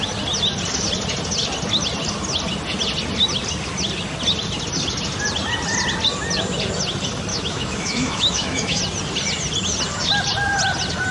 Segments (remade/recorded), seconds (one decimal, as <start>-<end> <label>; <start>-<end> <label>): 0.0-7.3 recorded; 7.3-8.8 remade; 8.8-11.1 recorded